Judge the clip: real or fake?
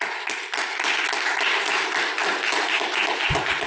real